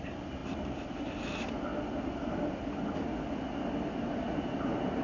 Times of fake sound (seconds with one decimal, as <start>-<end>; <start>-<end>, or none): none